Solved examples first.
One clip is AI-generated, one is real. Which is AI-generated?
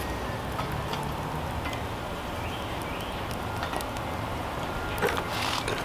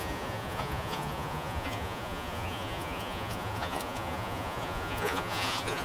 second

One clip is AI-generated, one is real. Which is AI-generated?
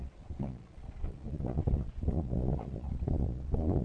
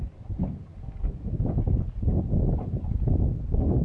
first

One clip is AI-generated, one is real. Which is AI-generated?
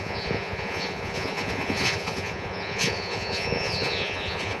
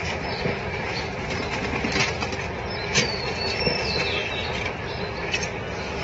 first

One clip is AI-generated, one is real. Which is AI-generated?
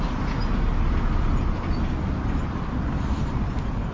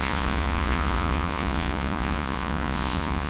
second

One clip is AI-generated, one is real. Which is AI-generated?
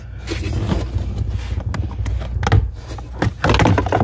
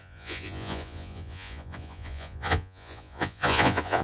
second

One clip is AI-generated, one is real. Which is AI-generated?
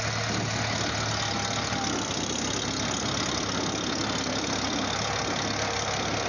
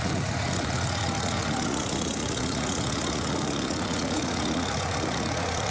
second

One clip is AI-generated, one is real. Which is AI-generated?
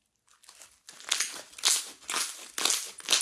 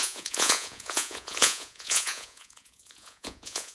second